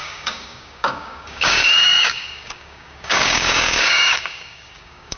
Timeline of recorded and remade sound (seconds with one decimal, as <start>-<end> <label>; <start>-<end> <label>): 0.0-5.2 remade